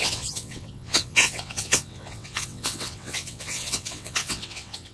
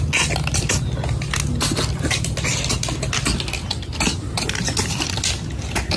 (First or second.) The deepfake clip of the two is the first